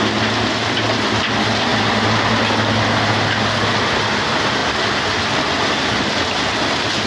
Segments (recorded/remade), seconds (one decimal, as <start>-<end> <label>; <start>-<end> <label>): 0.0-7.1 recorded